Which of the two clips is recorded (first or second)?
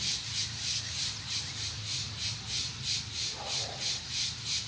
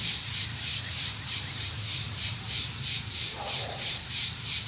first